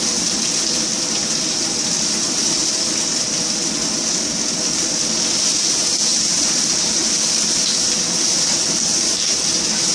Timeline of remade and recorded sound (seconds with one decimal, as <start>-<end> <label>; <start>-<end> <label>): 0.0-9.9 recorded